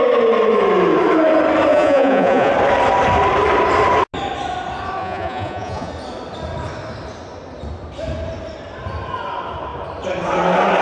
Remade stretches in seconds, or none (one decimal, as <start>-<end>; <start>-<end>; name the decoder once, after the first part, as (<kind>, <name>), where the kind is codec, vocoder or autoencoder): 1.7-2.5 (vocoder, Vocos); 5.0-5.9